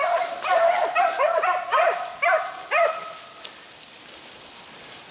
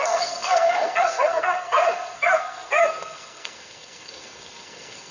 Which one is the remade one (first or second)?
second